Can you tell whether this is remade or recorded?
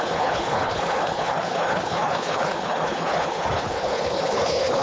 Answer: remade